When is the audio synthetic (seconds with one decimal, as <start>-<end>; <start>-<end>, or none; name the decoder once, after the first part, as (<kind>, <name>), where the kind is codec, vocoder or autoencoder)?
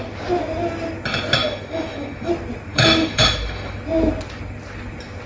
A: 1.4-2.3 (autoencoder, DAC-VAE); 2.7-3.8